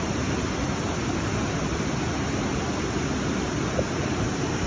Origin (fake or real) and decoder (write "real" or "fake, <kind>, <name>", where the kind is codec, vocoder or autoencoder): real